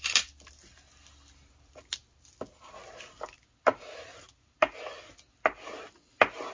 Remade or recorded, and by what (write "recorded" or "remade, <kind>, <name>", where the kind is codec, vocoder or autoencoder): recorded